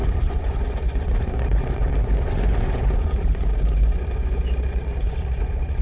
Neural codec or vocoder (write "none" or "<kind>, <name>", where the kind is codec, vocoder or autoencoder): vocoder, Vocos